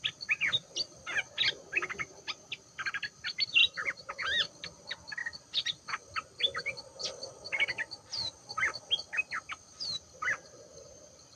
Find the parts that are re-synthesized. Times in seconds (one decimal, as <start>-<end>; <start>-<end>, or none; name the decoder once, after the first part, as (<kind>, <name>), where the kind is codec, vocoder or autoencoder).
3.6-4.5 (vocoder, BigVGAN v2)